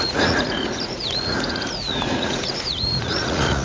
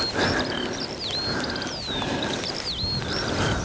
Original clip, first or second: second